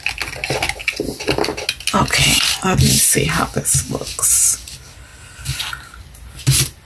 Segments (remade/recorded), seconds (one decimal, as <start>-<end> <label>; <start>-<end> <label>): 0.0-6.8 recorded